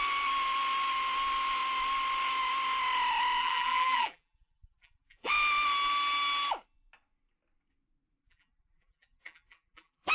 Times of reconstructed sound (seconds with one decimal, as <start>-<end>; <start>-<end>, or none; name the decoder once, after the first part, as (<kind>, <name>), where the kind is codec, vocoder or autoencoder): 3.4-5.3 (vocoder, BigVGAN v2); 8.2-10.1